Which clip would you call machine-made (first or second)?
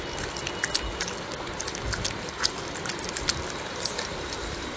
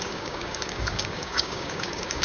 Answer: second